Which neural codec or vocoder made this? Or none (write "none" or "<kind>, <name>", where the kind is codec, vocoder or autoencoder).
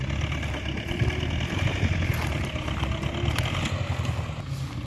none